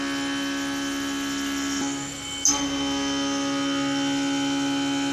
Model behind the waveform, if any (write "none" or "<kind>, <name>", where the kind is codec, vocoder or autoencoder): none